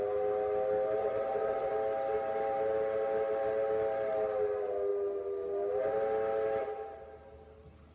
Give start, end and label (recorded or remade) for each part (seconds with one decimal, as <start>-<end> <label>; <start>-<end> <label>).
0.0-1.0 recorded; 1.0-1.7 remade; 1.7-7.9 recorded